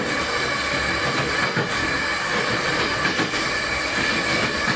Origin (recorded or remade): recorded